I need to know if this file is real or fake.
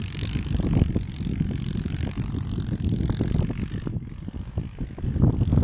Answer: real